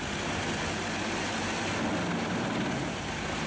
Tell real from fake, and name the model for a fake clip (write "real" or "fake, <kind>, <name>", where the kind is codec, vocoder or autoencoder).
real